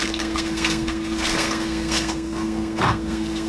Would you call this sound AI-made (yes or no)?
yes